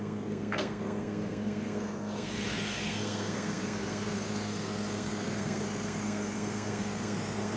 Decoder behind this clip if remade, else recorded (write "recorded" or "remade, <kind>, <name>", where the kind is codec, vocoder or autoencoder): remade, codec, SNAC